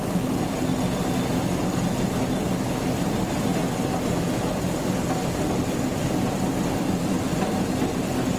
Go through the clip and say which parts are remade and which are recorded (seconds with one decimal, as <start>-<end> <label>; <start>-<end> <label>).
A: 0.0-3.5 recorded; 3.5-6.8 remade; 6.8-8.4 recorded